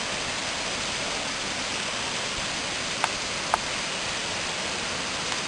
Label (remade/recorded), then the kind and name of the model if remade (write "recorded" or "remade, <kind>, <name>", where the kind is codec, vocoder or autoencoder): recorded